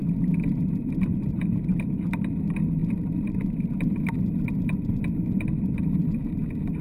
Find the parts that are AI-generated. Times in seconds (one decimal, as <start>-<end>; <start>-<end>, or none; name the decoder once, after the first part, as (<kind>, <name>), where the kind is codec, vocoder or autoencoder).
0.0-2.4 (vocoder, BigVGAN v2); 2.8-4.0